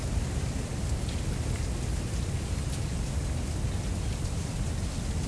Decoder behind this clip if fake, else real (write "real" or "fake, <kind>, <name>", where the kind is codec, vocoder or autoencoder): real